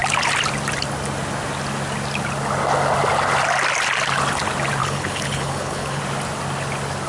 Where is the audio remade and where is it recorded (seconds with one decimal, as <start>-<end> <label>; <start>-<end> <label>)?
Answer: 0.0-4.8 recorded; 4.8-6.0 remade; 6.0-7.1 recorded